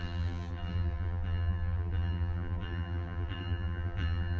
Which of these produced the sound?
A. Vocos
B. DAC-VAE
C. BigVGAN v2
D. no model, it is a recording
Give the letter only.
C